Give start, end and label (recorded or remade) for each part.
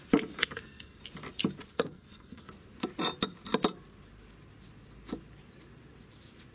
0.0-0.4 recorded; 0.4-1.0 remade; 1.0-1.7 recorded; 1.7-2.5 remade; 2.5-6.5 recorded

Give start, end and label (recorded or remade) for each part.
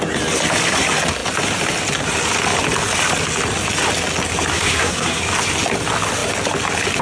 0.0-4.5 recorded; 4.5-5.2 remade; 5.2-7.0 recorded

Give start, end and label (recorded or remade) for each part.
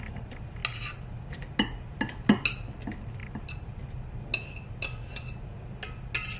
0.0-6.4 recorded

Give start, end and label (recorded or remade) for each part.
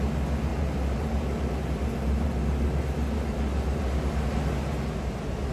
0.0-0.5 recorded; 0.5-3.8 remade; 3.8-5.5 recorded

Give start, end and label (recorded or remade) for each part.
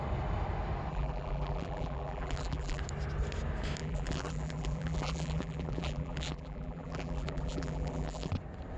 0.0-0.9 recorded; 0.9-2.8 remade; 2.8-3.8 recorded; 3.8-8.3 remade; 8.3-8.8 recorded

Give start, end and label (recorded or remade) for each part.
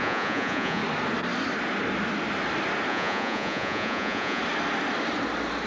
0.0-0.8 remade; 0.8-2.9 recorded; 2.9-4.4 remade; 4.4-5.7 recorded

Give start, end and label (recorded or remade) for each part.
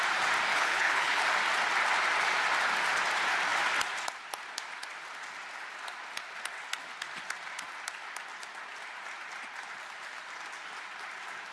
0.0-0.5 recorded; 0.5-1.2 remade; 1.2-11.5 recorded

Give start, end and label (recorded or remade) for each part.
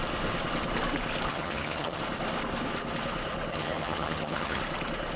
0.0-1.3 recorded; 1.3-2.0 remade; 2.0-3.5 recorded; 3.5-4.6 remade; 4.6-5.2 recorded